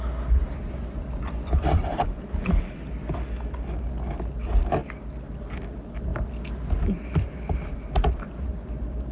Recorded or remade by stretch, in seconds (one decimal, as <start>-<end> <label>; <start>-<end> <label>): 0.0-1.0 recorded; 1.0-2.6 remade; 2.6-9.1 recorded